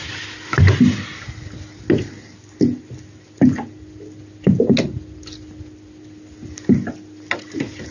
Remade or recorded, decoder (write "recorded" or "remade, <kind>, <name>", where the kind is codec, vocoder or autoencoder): recorded